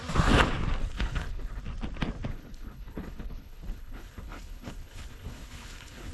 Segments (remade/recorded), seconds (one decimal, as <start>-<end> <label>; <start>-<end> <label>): 0.0-0.8 recorded; 0.8-1.6 remade; 1.6-2.3 recorded; 2.3-6.1 remade